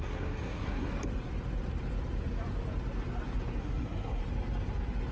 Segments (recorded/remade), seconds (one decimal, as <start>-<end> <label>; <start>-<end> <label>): 0.0-0.9 remade; 0.9-3.6 recorded; 3.6-4.2 remade; 4.2-5.1 recorded